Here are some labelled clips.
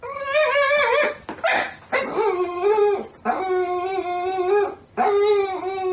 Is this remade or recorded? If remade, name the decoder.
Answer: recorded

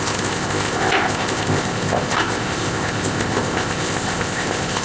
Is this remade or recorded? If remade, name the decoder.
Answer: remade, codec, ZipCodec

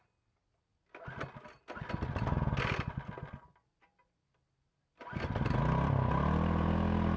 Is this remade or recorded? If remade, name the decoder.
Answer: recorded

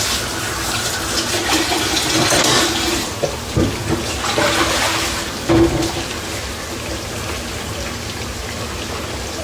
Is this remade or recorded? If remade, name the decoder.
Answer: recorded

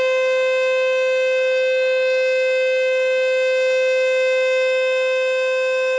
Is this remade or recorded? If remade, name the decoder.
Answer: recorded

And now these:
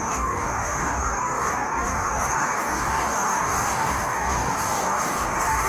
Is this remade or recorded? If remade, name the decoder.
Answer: remade, codec, DAC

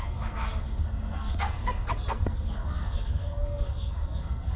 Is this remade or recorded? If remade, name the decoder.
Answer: remade, codec, SNAC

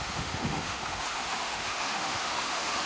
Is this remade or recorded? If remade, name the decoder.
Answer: remade, autoencoder, DAC-VAE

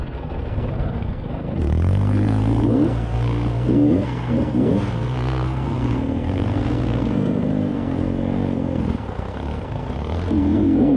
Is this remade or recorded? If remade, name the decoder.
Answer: remade, codec, SNAC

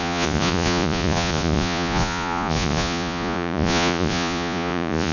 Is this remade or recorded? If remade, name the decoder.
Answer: remade, vocoder, Vocos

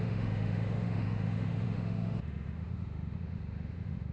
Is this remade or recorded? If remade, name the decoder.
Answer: remade, autoencoder, DAC-VAE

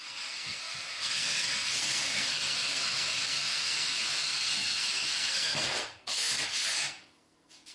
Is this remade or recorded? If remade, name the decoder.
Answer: remade, codec, SNAC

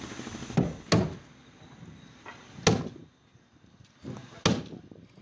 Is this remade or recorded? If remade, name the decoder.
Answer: recorded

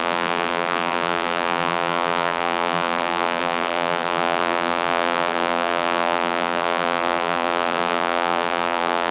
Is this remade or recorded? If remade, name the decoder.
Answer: remade, vocoder, BigVGAN v2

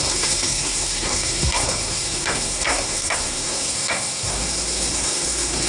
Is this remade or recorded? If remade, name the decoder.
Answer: remade, codec, SNAC